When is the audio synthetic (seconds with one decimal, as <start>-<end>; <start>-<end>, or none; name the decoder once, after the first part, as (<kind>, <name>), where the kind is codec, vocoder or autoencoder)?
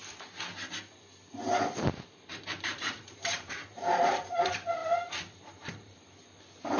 2.3-6.8 (vocoder, BigVGAN v2)